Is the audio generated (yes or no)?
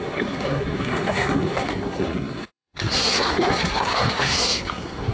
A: yes